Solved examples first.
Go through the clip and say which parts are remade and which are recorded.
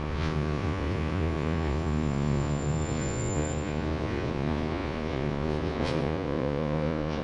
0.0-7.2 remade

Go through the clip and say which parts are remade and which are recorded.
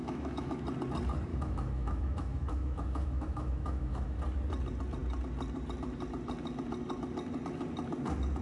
0.0-0.6 remade; 0.6-1.3 recorded; 1.3-4.2 remade; 4.2-8.4 recorded